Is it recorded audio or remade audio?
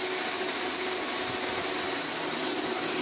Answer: recorded